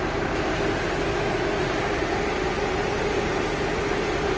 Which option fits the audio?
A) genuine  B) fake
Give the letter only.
A